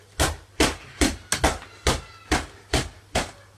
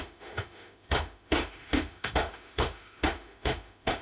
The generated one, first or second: second